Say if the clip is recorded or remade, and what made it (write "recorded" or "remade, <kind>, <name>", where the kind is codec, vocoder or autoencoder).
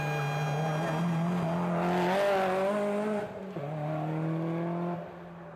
recorded